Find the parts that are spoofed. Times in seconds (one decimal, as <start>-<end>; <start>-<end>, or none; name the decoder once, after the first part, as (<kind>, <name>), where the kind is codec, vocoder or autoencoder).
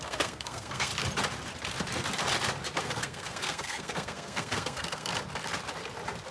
0.0-0.9 (codec, SNAC); 2.8-5.1